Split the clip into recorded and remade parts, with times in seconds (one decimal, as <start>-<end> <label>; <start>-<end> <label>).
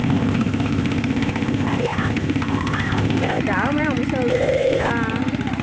0.0-3.4 remade; 3.4-4.3 recorded; 4.3-4.9 remade; 4.9-5.6 recorded